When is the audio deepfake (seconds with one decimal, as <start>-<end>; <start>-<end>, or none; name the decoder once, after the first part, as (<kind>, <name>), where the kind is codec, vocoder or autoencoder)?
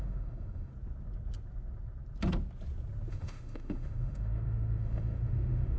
0.0-0.7 (autoencoder, DAC-VAE); 3.1-5.8